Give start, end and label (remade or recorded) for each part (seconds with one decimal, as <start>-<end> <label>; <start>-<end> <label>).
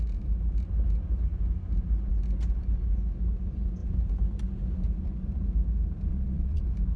0.0-6.1 recorded; 6.1-6.6 remade; 6.6-7.0 recorded